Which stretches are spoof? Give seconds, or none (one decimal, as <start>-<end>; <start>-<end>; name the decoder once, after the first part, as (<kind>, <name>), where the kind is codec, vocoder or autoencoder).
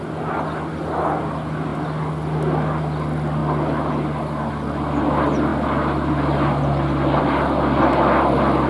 none